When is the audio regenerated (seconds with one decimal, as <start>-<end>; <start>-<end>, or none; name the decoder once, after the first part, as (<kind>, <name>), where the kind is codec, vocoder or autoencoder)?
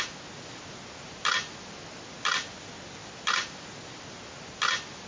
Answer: none